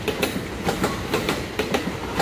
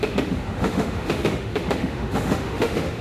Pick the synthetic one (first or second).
second